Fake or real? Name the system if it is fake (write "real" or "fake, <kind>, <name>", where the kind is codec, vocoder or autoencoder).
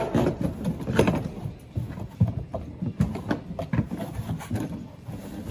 real